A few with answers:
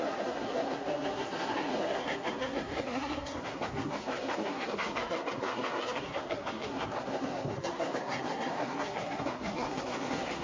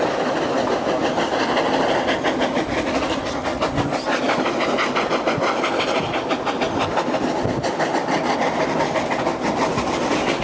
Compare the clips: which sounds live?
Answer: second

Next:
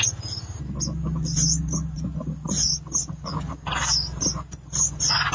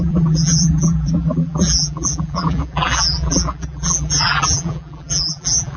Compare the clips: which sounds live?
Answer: first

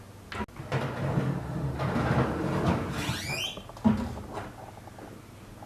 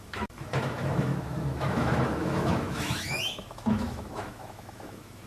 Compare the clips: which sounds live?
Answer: first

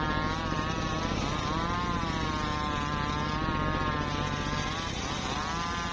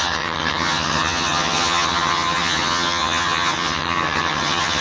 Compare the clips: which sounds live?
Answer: first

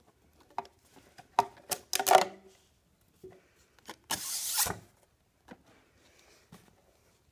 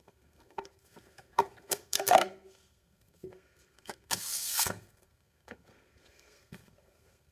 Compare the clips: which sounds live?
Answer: first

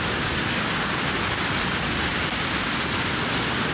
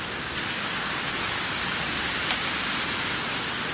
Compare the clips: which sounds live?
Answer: second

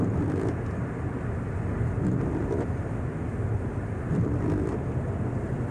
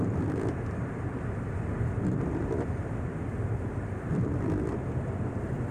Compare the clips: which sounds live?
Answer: first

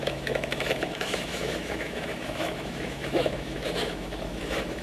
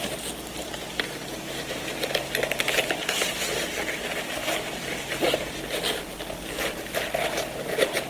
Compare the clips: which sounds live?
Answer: second